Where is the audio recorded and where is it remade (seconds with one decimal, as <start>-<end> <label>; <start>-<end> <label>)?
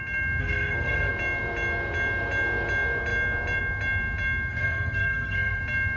0.0-0.4 recorded; 0.4-1.1 remade; 1.1-4.5 recorded; 4.5-5.6 remade; 5.6-6.0 recorded